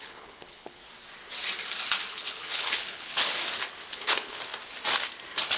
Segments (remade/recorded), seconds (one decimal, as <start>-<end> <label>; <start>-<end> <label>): 0.0-0.8 remade; 0.8-2.1 recorded; 2.1-3.4 remade; 3.4-3.9 recorded; 3.9-4.5 remade; 4.5-5.6 recorded